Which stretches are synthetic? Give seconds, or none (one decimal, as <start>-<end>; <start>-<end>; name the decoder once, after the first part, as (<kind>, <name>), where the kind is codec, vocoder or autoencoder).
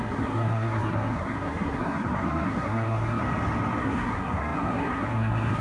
0.0-3.2 (codec, SNAC); 3.8-5.6